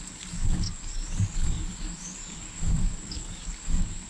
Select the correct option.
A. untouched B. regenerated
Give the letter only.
B